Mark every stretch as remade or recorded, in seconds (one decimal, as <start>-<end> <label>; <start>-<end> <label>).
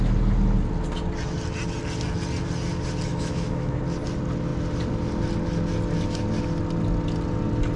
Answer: 0.0-3.1 recorded; 3.1-3.8 remade; 3.8-7.8 recorded